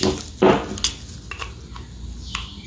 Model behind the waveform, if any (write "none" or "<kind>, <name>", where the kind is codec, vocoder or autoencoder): none